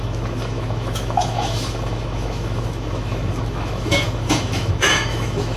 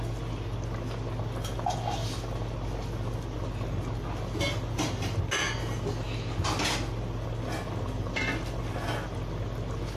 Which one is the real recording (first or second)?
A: second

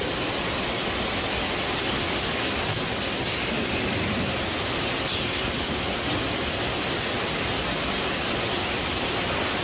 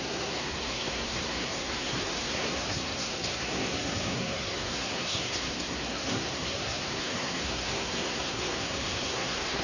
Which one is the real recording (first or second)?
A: first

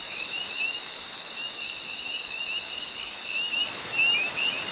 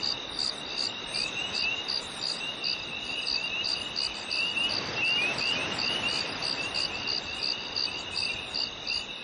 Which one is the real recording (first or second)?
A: second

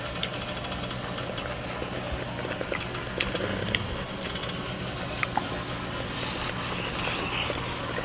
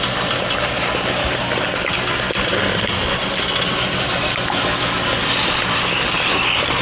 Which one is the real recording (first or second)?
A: first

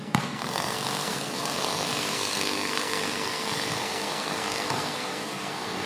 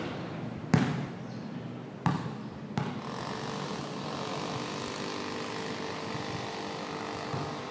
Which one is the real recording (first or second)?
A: second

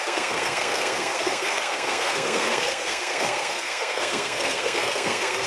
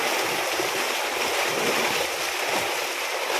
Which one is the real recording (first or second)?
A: second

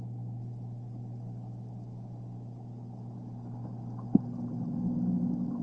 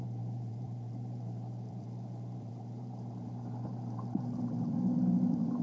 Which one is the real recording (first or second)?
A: first